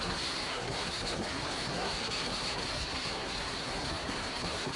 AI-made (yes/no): yes